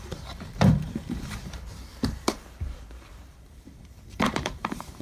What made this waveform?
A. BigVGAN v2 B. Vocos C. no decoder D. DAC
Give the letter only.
A